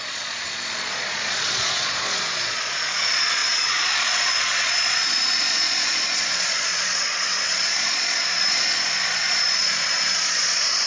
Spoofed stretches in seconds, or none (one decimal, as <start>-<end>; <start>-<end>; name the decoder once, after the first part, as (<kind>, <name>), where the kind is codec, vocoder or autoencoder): 0.0-10.9 (vocoder, Vocos)